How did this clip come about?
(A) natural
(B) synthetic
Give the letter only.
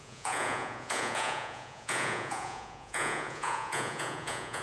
B